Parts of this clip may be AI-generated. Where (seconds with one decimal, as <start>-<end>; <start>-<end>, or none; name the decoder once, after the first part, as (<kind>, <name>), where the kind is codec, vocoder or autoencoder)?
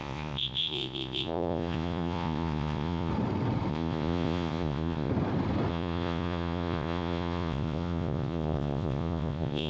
0.0-3.1 (vocoder, Vocos); 3.7-5.1; 5.7-9.7